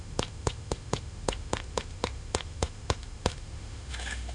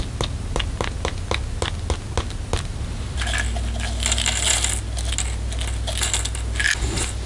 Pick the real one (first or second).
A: second